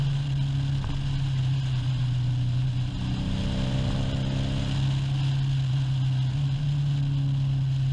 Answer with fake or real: real